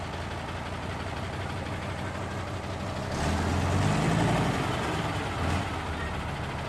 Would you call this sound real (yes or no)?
yes